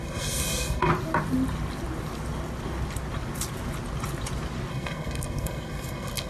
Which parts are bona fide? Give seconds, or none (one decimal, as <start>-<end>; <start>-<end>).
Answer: 0.9-4.7